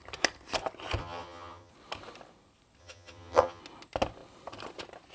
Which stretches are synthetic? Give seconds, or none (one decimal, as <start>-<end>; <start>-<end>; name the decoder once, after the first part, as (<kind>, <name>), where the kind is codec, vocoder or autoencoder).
1.0-1.7 (vocoder, HiFi-GAN); 2.8-3.6